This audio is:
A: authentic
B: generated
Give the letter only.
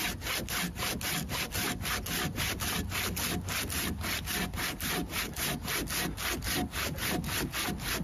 A